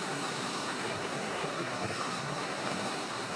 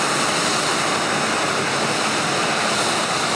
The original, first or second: second